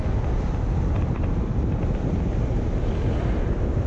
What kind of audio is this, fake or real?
real